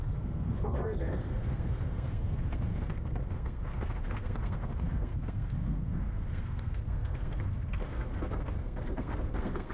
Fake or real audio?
fake